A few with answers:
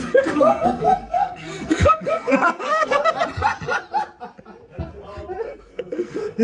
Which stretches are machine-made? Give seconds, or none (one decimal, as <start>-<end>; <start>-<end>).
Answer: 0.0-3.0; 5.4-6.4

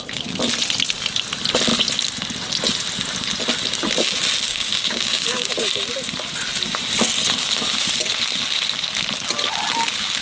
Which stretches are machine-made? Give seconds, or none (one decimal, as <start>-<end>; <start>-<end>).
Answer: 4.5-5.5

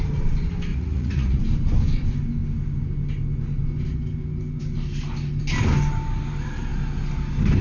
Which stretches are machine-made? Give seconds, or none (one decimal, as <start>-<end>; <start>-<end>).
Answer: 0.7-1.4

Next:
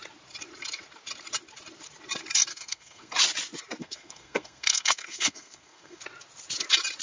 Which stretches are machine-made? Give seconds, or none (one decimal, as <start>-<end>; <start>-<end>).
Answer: 2.5-3.1; 3.8-6.0

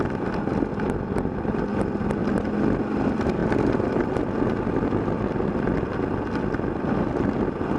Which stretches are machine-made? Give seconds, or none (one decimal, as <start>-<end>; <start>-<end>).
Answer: 3.4-4.2

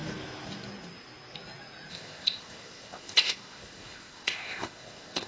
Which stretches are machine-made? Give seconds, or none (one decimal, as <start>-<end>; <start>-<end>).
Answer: 1.9-5.3

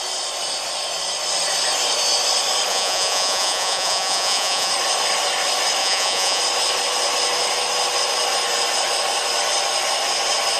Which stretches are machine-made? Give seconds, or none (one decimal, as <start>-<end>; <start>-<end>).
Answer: 2.7-4.7; 5.8-6.4